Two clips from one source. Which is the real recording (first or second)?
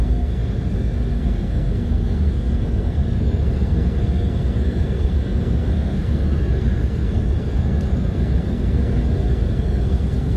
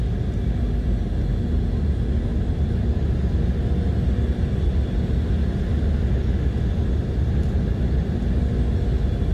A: second